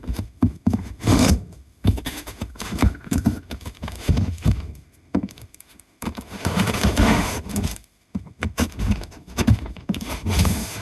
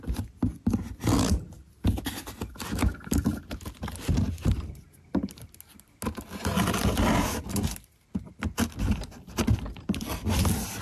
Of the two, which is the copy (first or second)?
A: first